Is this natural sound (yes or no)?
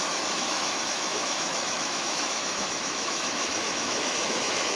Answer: no